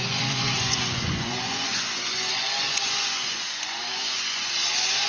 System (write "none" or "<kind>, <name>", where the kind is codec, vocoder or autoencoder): vocoder, Vocos